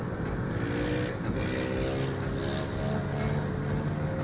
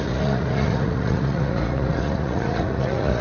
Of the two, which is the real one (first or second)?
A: first